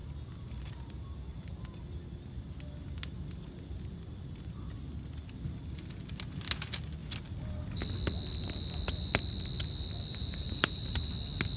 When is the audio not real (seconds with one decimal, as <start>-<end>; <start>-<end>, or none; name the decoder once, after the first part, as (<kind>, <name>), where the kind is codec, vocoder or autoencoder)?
10.1-10.8 (vocoder, BigVGAN v2)